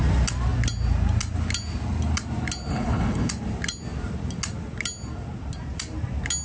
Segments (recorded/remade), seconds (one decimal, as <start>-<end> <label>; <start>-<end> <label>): 0.0-2.7 recorded; 2.7-3.3 remade; 3.3-6.4 recorded